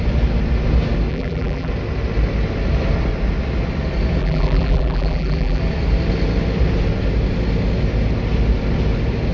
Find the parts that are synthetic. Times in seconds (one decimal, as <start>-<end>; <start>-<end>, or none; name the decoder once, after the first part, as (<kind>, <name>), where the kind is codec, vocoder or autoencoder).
1.1-1.7 (vocoder, BigVGAN v2); 4.2-5.6